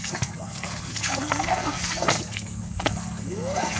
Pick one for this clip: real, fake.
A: fake